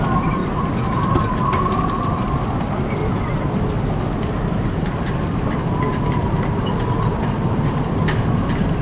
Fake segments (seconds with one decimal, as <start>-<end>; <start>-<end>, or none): 0.0-0.4; 1.9-3.0; 4.6-8.8